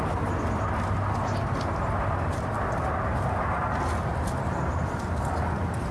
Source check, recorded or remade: recorded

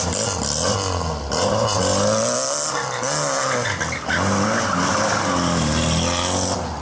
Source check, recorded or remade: recorded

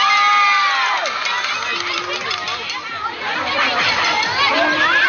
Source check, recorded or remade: recorded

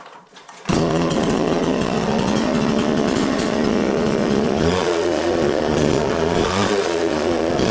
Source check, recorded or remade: remade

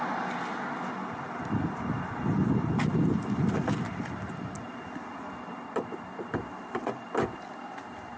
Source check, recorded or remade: recorded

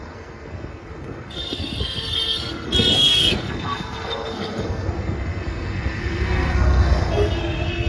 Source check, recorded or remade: remade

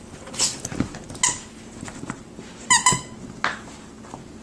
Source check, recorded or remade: recorded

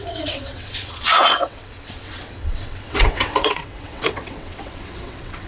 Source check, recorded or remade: remade